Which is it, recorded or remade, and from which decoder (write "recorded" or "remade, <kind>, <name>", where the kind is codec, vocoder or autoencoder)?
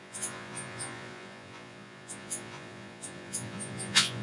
remade, vocoder, Vocos